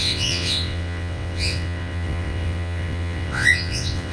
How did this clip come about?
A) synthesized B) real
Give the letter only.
A